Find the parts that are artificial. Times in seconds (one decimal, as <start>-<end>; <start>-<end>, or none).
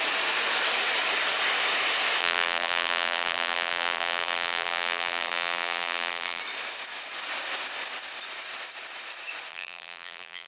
2.2-6.4; 9.5-10.5